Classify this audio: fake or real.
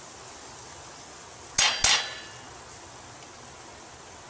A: real